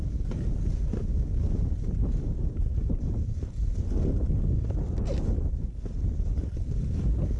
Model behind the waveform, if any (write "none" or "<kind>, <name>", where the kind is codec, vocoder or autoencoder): none